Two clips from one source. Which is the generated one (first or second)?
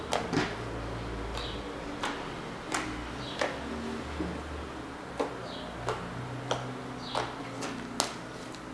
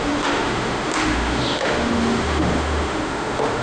second